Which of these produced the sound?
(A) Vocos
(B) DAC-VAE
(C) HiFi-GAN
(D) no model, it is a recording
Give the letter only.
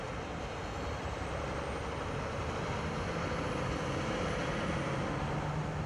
D